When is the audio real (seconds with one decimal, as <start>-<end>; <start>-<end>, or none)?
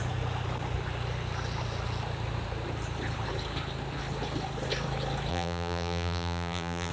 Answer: 0.0-5.3